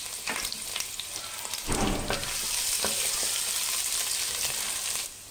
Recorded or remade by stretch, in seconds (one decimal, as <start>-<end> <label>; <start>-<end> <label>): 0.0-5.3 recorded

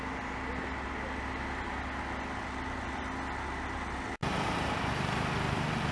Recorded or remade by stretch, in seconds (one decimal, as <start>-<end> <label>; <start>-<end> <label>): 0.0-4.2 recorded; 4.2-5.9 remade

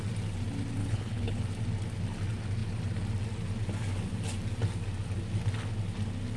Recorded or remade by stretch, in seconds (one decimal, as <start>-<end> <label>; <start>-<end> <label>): 0.0-0.8 recorded; 0.8-1.4 remade; 1.4-6.4 recorded

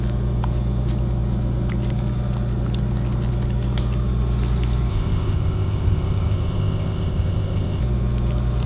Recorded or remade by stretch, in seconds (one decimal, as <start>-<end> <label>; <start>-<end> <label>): 0.0-4.9 recorded; 4.9-7.8 remade; 7.8-8.7 recorded

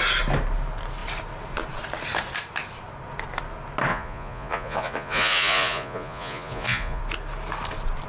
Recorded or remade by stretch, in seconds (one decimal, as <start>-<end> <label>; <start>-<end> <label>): 0.0-3.9 recorded; 3.9-7.0 remade; 7.0-8.1 recorded